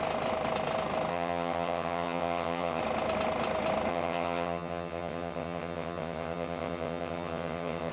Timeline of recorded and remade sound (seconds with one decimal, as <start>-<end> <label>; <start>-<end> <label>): 0.0-1.1 recorded; 1.1-2.8 remade; 2.8-3.9 recorded; 3.9-7.9 remade